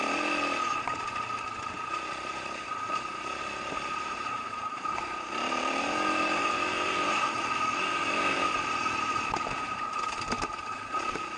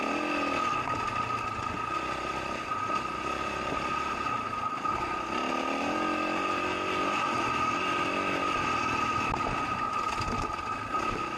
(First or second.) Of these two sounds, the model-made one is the first